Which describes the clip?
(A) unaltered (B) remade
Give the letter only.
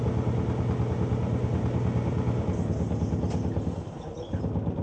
A